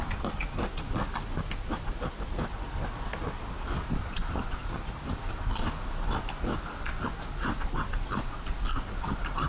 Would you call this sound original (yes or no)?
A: yes